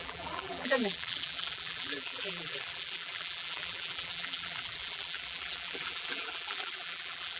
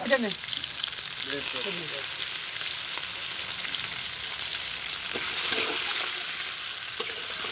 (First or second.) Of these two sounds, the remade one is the first